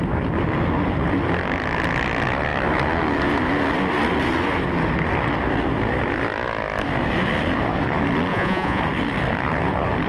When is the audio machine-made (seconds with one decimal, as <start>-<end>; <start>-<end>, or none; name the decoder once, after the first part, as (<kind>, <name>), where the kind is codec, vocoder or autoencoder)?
8.3-8.8 (vocoder, Vocos)